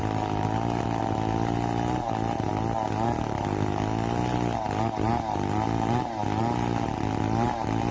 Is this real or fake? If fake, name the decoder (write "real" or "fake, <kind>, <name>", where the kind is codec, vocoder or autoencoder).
real